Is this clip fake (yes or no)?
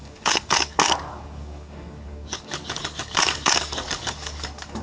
yes